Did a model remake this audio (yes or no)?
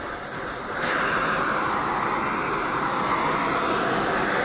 no